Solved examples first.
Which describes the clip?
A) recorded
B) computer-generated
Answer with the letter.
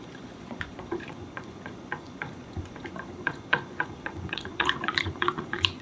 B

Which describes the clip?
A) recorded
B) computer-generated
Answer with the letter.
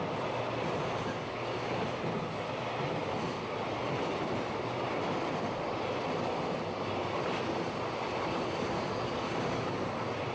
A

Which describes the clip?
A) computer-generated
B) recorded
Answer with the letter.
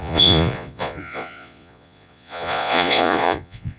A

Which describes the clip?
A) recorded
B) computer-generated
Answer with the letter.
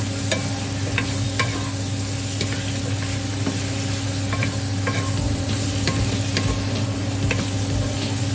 A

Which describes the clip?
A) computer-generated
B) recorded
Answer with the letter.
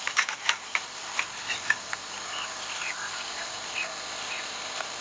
B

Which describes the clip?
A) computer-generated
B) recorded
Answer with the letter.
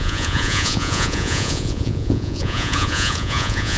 A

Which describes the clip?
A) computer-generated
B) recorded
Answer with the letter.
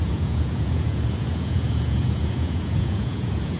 A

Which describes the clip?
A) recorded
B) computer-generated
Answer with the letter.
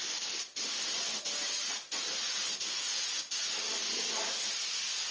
A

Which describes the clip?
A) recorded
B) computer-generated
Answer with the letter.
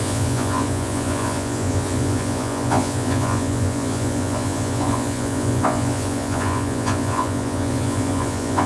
B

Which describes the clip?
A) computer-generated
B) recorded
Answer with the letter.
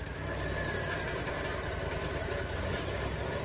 B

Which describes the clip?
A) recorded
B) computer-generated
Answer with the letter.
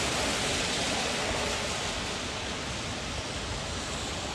A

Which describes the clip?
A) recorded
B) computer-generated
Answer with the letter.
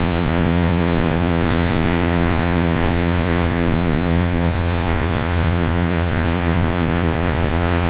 B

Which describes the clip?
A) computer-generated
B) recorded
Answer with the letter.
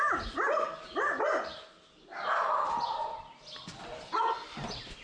B